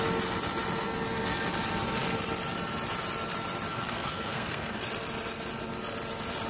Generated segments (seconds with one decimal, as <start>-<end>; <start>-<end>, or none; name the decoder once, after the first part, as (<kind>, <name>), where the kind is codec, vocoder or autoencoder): 3.7-4.8 (codec, SNAC)